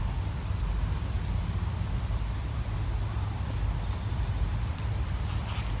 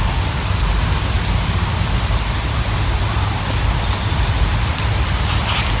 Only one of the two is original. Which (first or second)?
first